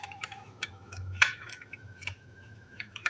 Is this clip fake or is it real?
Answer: fake